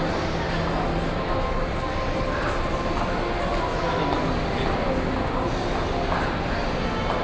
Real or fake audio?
real